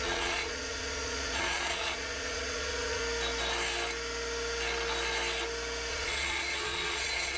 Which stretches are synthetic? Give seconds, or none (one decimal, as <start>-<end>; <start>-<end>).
0.0-3.0; 5.9-7.4